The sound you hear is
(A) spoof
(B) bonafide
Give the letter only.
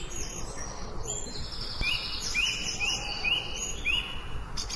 B